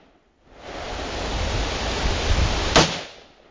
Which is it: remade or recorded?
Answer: recorded